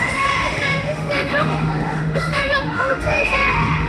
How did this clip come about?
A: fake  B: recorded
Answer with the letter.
A